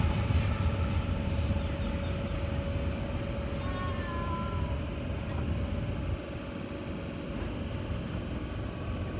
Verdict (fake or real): real